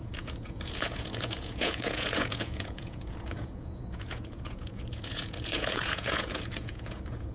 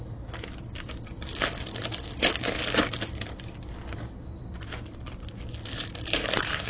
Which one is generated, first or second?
first